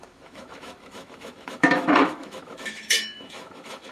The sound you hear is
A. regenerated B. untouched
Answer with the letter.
A